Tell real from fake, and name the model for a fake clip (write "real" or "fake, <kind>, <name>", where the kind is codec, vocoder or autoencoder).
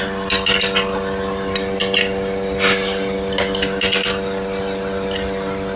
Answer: real